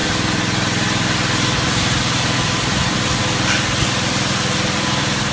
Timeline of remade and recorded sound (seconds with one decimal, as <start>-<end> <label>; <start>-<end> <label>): 0.0-5.3 recorded